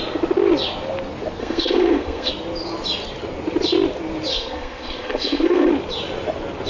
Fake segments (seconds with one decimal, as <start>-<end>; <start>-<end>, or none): 1.4-2.3; 4.3-5.7